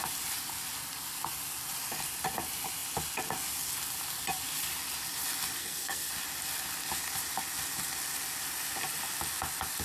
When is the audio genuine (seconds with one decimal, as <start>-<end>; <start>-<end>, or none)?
0.0-5.6; 6.1-9.8